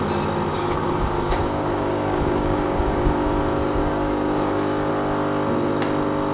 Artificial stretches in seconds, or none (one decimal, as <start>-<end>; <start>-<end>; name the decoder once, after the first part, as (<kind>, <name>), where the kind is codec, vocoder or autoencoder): 0.5-3.4 (codec, DAC); 3.8-4.9